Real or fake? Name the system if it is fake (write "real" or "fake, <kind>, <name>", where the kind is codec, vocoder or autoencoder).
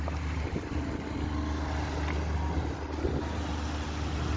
real